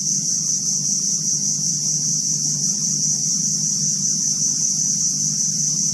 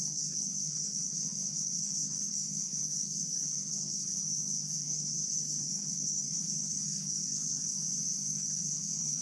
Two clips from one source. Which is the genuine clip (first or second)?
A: first